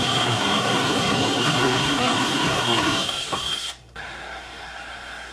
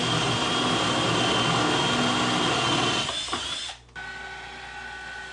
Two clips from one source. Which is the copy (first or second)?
first